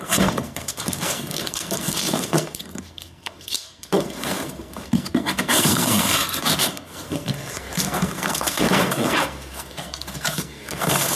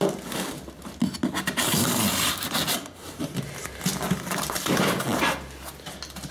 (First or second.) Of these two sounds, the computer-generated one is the first